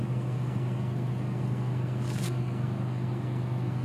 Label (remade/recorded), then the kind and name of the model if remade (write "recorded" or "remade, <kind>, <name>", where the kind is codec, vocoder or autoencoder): remade, codec, SNAC